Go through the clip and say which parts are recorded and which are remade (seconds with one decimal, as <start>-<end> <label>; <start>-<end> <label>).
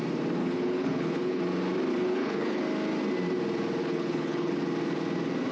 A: 0.0-0.4 recorded; 0.4-1.4 remade; 1.4-1.9 recorded; 1.9-2.6 remade; 2.6-3.8 recorded; 3.8-4.5 remade; 4.5-5.5 recorded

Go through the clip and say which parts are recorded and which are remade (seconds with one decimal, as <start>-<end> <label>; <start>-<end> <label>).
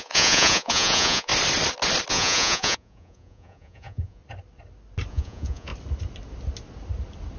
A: 0.0-1.3 remade; 1.3-2.1 recorded; 2.1-4.2 remade; 4.2-5.1 recorded; 5.1-5.7 remade; 5.7-7.4 recorded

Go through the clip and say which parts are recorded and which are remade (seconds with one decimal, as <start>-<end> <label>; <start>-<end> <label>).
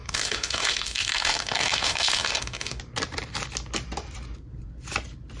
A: 0.0-2.8 remade; 2.8-5.4 recorded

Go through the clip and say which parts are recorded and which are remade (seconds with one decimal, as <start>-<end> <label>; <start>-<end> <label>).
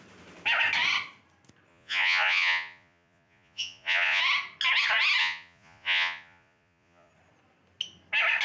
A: 0.0-1.7 recorded; 1.7-4.2 remade; 4.2-5.2 recorded; 5.2-7.1 remade; 7.1-8.4 recorded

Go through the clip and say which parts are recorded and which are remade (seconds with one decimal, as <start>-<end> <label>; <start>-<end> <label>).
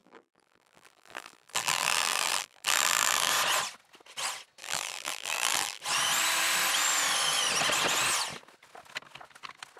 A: 0.0-3.3 remade; 3.3-4.6 recorded; 4.6-5.8 remade; 5.8-9.8 recorded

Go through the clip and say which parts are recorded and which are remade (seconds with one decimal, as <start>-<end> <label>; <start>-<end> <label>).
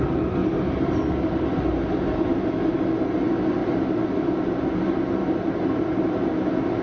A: 0.0-6.8 recorded